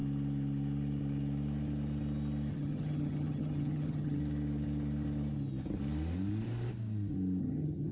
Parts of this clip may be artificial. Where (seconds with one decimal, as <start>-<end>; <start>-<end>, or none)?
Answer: 2.5-4.2; 7.4-7.9